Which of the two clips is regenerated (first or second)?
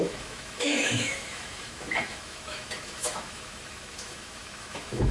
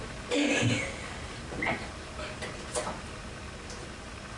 first